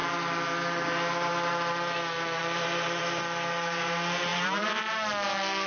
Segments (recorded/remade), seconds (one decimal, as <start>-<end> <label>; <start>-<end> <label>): 0.0-2.4 recorded; 2.4-3.0 remade; 3.0-4.3 recorded; 4.3-4.8 remade; 4.8-5.7 recorded